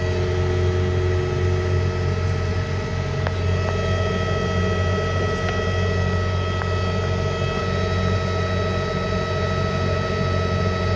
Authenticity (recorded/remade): recorded